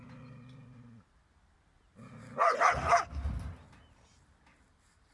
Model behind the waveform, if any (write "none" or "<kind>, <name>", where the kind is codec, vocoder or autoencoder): none